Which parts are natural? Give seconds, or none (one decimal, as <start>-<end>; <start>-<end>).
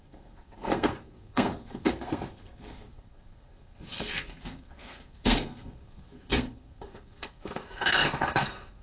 none